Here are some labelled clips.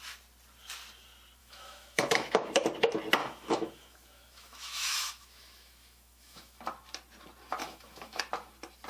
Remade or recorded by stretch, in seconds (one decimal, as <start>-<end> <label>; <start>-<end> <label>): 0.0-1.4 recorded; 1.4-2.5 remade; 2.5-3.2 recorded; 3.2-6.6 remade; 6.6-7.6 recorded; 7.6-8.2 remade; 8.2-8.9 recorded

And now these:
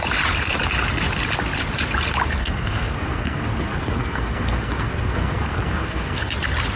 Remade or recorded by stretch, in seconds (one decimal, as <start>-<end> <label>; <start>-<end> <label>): 0.0-2.4 recorded; 2.4-6.3 remade; 6.3-6.8 recorded

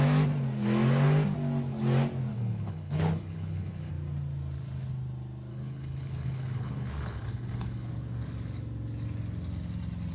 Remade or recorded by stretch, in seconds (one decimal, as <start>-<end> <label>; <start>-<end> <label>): 0.0-2.3 recorded; 2.3-3.9 remade; 3.9-5.5 recorded; 5.5-7.9 remade; 7.9-10.1 recorded

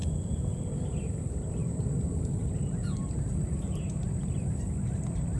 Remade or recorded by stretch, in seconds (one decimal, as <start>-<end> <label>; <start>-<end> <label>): 0.0-0.6 remade; 0.6-5.4 recorded